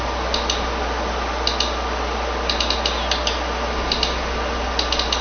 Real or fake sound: real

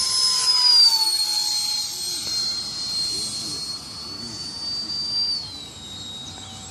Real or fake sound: real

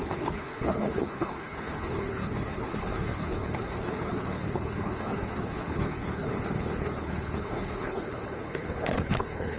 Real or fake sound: fake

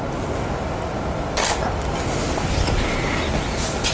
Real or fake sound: real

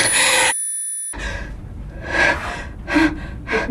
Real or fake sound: real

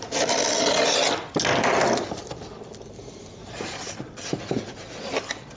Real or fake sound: real